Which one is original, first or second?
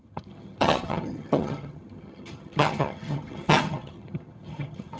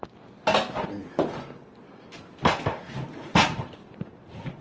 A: second